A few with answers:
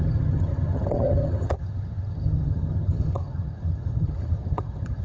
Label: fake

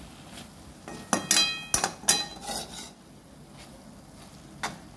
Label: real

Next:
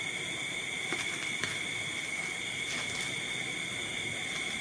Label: real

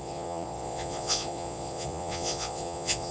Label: fake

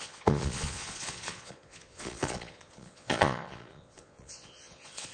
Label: fake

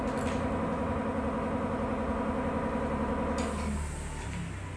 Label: real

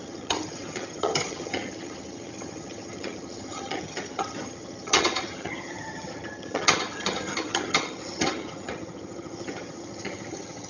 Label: fake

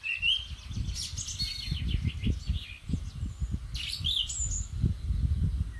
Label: real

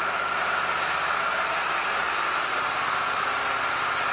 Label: real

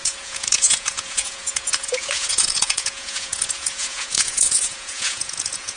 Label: fake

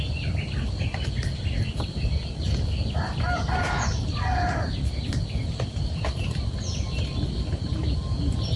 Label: real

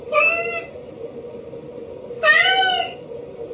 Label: real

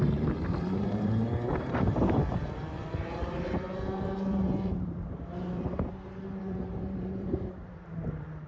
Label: fake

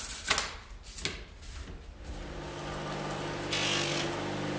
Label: real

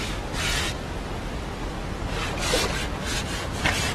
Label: real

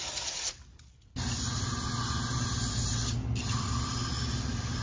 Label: real